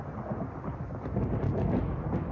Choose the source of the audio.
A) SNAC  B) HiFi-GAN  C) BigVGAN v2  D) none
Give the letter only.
D